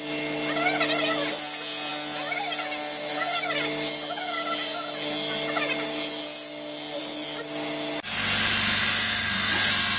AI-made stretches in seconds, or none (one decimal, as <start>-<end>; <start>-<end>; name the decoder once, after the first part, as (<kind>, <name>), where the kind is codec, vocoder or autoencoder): none